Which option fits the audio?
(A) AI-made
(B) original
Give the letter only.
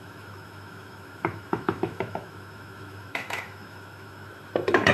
A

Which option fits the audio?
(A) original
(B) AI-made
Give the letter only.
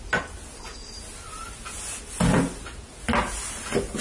A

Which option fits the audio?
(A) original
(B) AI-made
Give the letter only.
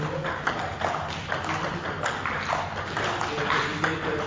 A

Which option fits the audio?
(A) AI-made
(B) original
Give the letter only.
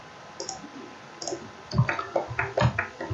B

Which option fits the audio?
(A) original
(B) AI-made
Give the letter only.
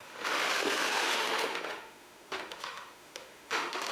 B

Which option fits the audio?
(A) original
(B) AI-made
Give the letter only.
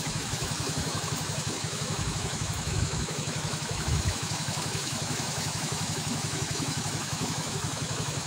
B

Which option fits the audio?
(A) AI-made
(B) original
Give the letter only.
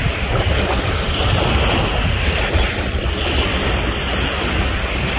B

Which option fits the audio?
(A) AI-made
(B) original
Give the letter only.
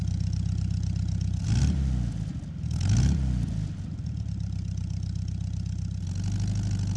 B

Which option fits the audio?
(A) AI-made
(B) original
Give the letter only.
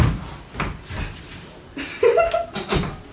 B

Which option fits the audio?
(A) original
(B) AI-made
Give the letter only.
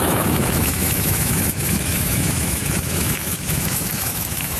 B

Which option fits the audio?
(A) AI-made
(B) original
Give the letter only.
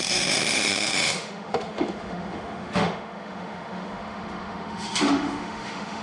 A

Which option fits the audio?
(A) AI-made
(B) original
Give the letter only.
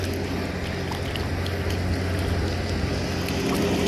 B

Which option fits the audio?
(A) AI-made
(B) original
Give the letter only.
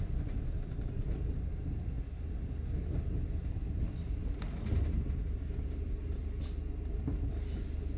B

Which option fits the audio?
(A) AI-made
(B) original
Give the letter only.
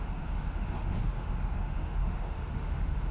A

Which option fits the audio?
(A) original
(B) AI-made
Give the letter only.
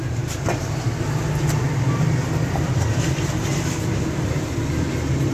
A